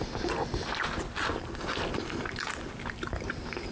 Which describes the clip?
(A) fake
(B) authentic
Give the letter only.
B